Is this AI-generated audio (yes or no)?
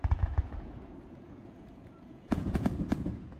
yes